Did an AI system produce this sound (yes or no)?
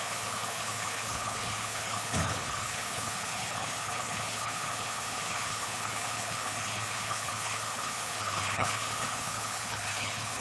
yes